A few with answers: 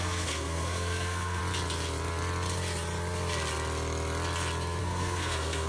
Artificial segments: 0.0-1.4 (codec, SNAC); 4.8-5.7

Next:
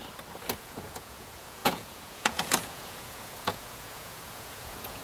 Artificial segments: 0.6-5.0 (vocoder, Vocos)

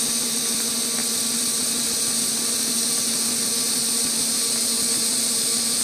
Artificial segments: none

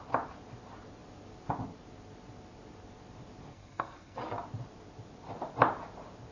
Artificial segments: 3.5-4.2 (codec, SNAC)

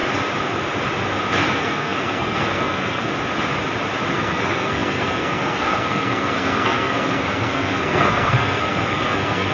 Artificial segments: 1.5-3.1 (codec, SNAC); 4.1-9.5

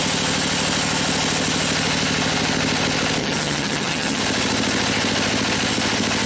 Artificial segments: 3.2-4.2 (vocoder, HiFi-GAN)

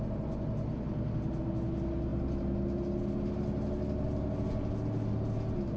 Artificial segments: none

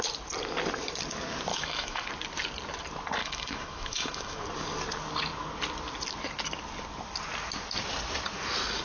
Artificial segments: 1.5-2.1 (autoencoder, DAC-VAE); 3.2-4.4